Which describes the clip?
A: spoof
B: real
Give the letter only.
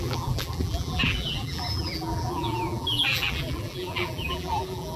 A